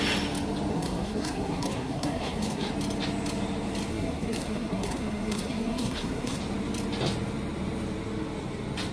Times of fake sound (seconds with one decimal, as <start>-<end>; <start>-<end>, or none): 0.7-2.7; 3.9-6.4